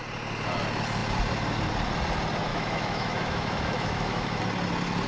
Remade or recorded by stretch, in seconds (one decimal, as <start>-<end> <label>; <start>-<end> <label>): 0.0-2.5 recorded; 2.5-4.4 remade; 4.4-5.1 recorded